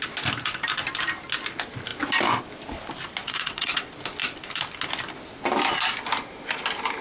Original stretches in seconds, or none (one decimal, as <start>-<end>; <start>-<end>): 0.0-3.2; 3.9-7.0